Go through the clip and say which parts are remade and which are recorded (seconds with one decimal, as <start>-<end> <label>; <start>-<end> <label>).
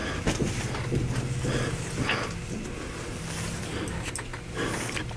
0.0-3.1 recorded; 3.1-4.3 remade; 4.3-5.2 recorded